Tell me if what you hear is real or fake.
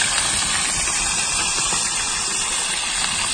real